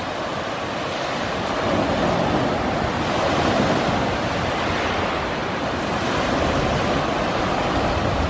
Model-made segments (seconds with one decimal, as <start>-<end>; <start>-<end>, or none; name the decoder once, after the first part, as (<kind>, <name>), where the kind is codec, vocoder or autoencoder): none